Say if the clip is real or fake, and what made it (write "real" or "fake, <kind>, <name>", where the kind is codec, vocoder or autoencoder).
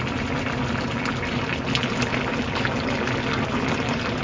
real